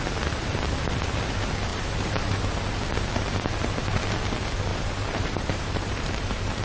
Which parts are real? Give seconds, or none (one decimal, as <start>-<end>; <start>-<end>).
0.0-1.7; 2.4-4.7